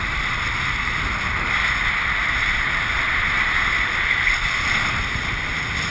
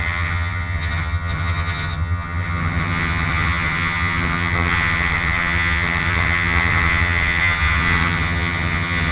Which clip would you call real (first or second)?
first